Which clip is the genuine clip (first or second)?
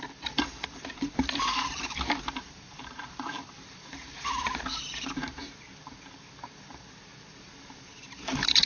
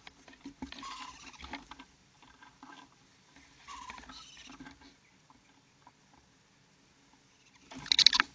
second